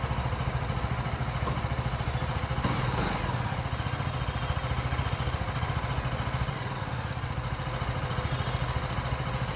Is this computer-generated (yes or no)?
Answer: no